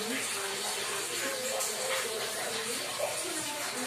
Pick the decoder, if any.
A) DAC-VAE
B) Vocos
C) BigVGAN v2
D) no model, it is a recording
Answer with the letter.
D